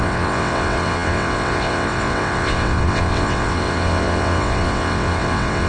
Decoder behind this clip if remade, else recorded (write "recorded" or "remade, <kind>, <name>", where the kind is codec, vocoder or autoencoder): remade, vocoder, WaveNeXt